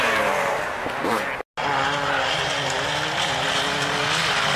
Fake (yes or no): no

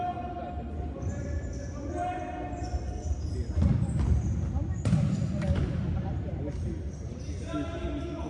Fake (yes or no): no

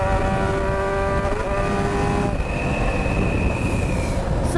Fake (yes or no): no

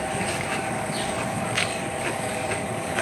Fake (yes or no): yes